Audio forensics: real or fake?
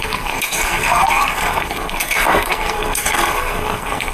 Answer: fake